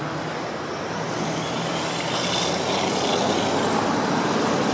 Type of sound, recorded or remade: recorded